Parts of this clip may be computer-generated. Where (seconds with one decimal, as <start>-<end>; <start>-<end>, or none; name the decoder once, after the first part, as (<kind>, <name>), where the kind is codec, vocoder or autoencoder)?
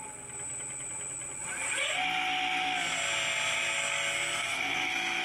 4.4-5.2 (codec, SNAC)